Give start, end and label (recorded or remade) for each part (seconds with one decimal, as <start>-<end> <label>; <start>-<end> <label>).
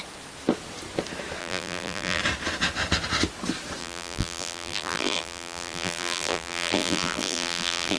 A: 0.0-1.4 recorded; 1.4-2.2 remade; 2.2-3.8 recorded; 3.8-8.0 remade